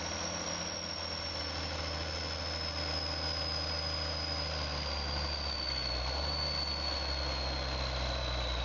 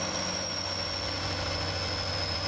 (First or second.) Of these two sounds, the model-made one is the second